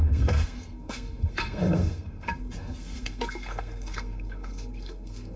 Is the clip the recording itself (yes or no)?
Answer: no